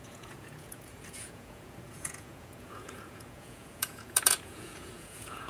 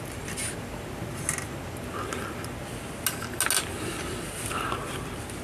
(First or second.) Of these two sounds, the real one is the second